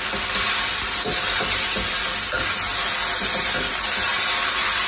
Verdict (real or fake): real